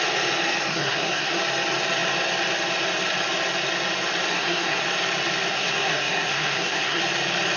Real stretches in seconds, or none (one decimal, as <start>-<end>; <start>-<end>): 0.0-0.7; 1.4-4.3; 4.8-5.5; 7.0-7.6